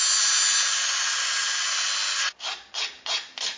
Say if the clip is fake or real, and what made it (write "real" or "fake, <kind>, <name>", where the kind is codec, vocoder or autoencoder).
real